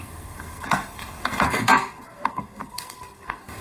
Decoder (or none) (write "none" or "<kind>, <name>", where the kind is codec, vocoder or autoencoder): codec, SNAC